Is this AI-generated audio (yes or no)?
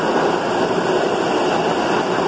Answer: no